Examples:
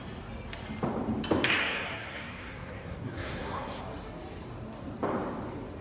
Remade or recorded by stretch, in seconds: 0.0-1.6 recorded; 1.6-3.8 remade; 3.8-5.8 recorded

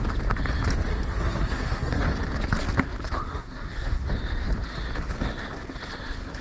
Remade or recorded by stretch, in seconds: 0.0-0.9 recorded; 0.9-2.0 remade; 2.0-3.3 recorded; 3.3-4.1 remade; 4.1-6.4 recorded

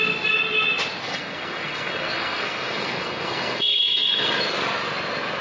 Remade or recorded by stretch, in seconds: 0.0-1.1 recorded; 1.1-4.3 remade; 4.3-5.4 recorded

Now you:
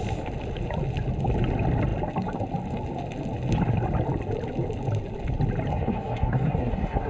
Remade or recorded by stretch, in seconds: 0.0-5.7 recorded; 5.7-7.1 remade

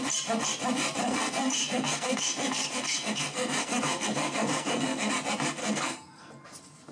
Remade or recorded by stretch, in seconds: 0.0-1.0 recorded; 1.0-5.1 remade; 5.1-5.6 recorded; 5.6-6.3 remade; 6.3-6.9 recorded

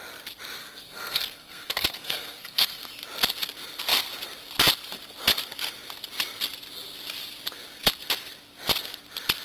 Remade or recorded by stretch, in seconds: 0.0-0.6 recorded; 0.6-2.9 remade; 2.9-9.4 recorded

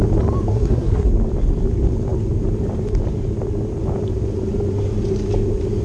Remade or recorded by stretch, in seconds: 0.0-0.5 recorded; 0.5-1.1 remade; 1.1-5.8 recorded